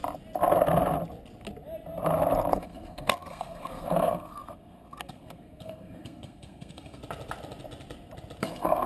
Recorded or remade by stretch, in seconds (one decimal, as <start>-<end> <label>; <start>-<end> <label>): 0.0-2.5 recorded; 2.5-7.0 remade; 7.0-8.4 recorded; 8.4-8.9 remade